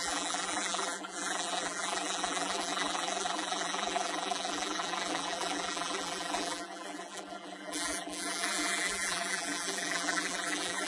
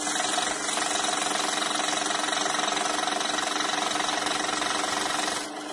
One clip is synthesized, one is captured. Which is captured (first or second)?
second